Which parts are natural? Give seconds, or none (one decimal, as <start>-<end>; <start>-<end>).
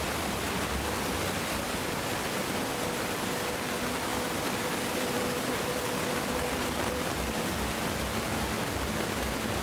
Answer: 0.0-4.1; 6.3-9.6